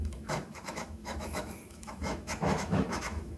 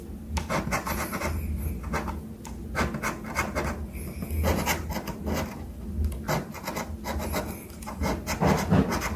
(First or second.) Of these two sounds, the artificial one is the first